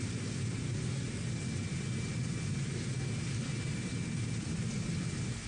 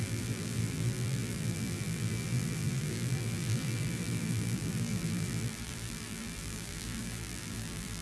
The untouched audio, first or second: first